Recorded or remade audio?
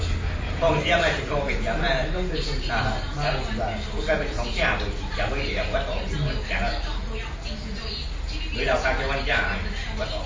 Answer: recorded